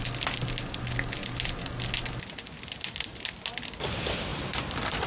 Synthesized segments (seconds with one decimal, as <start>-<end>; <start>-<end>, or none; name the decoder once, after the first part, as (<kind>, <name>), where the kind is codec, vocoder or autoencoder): none